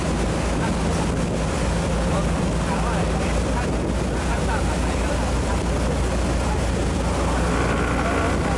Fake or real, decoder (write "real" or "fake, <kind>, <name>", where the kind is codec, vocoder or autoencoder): real